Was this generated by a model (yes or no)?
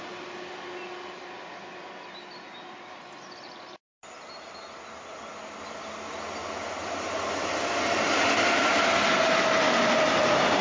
no